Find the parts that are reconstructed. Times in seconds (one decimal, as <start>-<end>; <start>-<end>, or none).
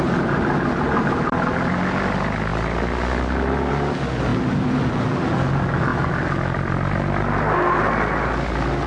none